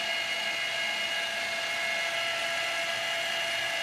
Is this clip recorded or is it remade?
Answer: recorded